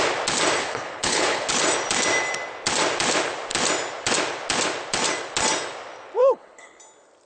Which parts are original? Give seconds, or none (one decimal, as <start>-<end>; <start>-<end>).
0.0-0.6; 1.5-6.2; 6.8-7.3